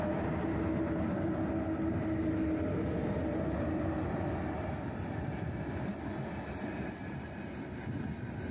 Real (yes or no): yes